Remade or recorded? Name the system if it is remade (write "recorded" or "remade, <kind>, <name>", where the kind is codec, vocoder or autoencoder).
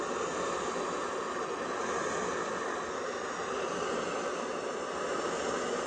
recorded